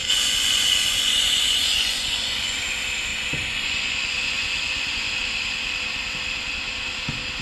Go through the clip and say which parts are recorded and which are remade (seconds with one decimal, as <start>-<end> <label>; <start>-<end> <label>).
0.0-2.6 remade; 2.6-3.1 recorded; 3.1-5.1 remade; 5.1-7.4 recorded